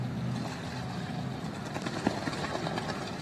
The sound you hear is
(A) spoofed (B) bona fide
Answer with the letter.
B